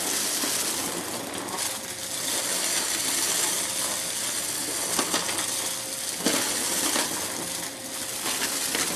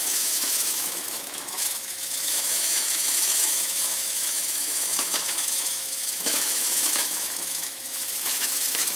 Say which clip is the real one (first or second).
first